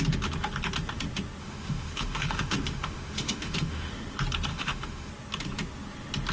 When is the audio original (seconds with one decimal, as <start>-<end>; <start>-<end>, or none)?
0.0-1.4; 3.9-4.5; 5.1-6.3